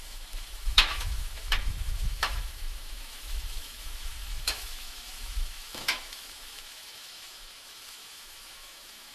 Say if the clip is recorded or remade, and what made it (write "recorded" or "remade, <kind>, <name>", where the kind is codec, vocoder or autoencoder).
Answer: remade, autoencoder, DAC-VAE